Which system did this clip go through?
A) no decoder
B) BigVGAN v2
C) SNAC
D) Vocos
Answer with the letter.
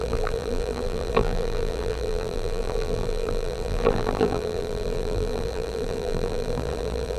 B